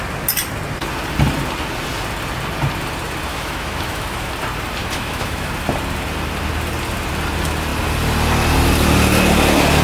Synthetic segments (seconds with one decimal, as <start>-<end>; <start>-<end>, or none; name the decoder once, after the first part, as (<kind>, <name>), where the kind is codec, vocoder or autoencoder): 3.3-4.3 (autoencoder, DAC-VAE); 4.8-5.5